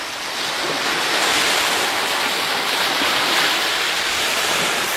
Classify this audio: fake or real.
real